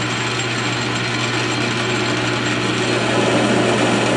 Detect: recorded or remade recorded